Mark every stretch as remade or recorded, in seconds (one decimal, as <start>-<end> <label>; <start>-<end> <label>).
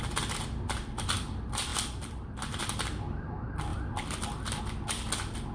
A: 0.0-5.5 recorded